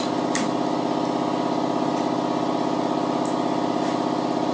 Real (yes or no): yes